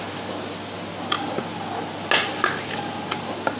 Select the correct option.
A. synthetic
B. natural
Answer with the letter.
B